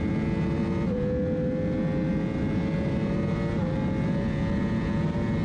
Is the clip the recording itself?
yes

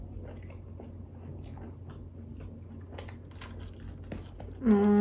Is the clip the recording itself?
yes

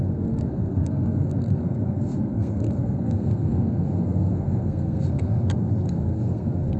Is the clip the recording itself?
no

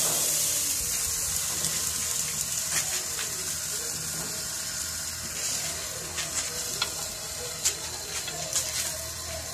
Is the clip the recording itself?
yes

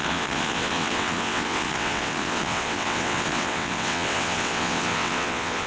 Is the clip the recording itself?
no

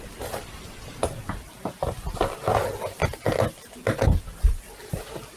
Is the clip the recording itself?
yes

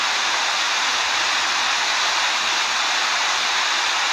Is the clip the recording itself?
no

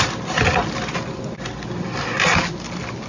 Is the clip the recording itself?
yes